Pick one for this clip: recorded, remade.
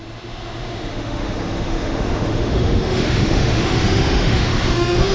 remade